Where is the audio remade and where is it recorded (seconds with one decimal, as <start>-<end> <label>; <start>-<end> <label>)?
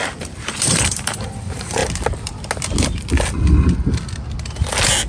0.0-0.6 recorded; 0.6-1.8 remade; 1.8-5.1 recorded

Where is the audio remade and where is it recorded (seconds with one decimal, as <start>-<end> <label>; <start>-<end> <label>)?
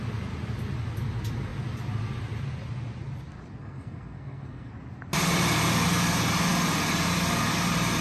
0.0-3.6 recorded; 3.6-4.7 remade; 4.7-8.0 recorded